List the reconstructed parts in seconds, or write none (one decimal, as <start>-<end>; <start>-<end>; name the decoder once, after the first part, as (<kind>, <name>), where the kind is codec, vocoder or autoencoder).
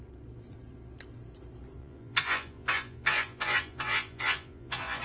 1.8-5.0 (vocoder, Vocos)